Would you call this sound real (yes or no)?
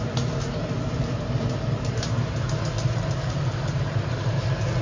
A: no